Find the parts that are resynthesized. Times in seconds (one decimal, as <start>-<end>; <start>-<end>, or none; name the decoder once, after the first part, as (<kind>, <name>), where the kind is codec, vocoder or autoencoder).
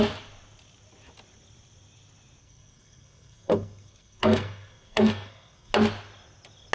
2.4-5.7 (codec, SNAC)